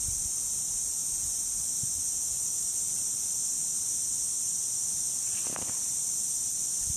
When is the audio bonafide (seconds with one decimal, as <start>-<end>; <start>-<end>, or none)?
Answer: 0.0-7.0